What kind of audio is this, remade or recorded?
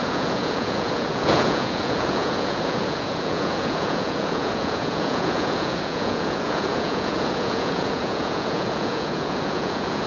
remade